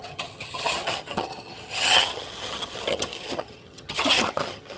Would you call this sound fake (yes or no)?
yes